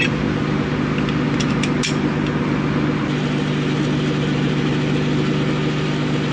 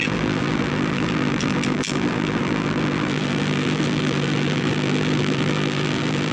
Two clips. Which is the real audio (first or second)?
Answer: first